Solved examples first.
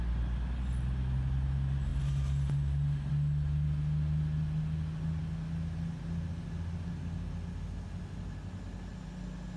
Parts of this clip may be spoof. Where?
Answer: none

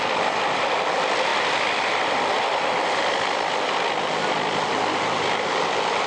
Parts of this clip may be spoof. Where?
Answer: none

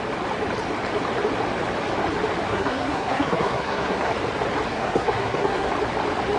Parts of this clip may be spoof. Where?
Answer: 2.5-4.1 (codec, SNAC); 4.7-5.7

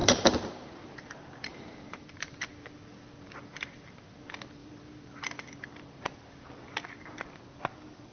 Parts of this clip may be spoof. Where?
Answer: 0.0-1.1 (vocoder, BigVGAN v2); 1.5-2.4

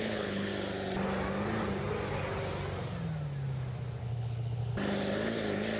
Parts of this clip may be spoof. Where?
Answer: 0.0-0.5 (codec, HILCodec); 4.0-4.6